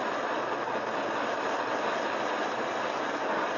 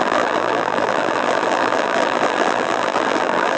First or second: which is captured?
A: first